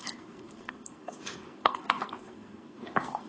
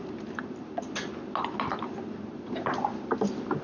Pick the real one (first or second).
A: second